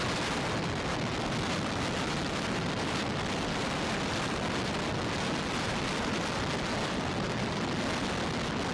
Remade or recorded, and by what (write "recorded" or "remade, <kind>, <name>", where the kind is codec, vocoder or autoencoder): recorded